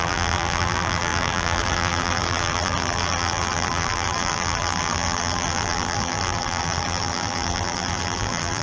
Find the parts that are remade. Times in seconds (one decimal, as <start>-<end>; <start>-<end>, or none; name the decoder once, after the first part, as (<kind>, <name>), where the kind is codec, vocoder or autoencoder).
0.0-8.6 (vocoder, BigVGAN v2)

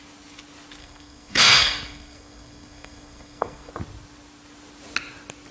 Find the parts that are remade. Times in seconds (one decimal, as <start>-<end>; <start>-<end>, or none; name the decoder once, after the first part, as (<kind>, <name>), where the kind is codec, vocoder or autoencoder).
0.8-3.7 (codec, SNAC)

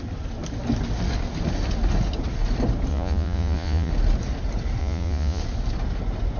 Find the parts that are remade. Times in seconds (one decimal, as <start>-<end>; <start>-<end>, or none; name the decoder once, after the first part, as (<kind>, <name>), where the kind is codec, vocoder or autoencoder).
2.9-3.9 (vocoder, Vocos); 4.8-5.4

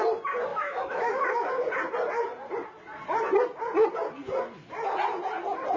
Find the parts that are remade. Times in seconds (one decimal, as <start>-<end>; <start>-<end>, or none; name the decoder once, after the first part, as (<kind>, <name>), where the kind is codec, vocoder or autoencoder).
0.5-1.5 (autoencoder, DAC-VAE)

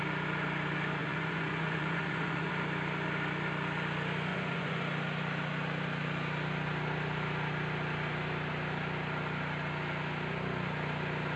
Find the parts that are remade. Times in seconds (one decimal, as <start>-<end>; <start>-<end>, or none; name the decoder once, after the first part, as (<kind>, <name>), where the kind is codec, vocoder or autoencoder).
1.0-2.5 (vocoder, Vocos); 4.3-4.8

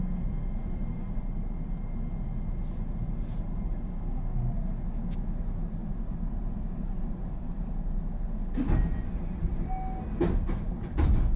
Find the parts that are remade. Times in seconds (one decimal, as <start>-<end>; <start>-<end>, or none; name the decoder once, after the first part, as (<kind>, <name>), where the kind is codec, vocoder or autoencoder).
0.6-1.2 (vocoder, BigVGAN v2); 5.8-7.7

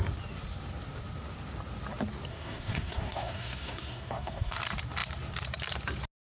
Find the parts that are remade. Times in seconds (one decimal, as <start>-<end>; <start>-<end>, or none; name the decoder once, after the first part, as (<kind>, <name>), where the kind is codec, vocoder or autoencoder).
2.3-4.6 (codec, SNAC)